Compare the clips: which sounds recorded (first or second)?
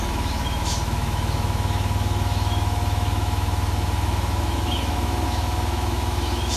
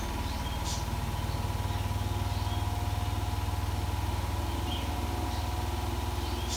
second